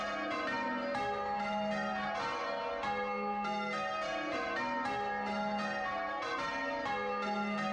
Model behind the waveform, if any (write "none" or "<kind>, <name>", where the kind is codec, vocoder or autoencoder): none